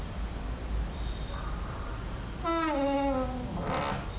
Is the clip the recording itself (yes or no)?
yes